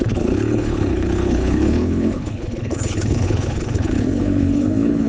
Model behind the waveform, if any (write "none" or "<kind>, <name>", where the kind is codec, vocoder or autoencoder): codec, HILCodec